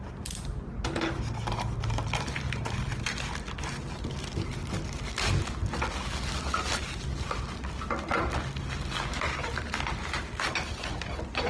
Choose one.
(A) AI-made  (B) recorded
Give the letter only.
B